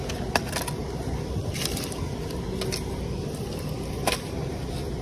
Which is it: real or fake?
real